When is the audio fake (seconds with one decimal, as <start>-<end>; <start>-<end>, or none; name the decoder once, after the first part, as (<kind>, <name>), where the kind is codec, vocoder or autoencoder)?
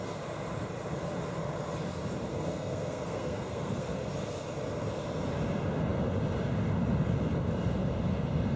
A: 2.3-4.1 (codec, SNAC)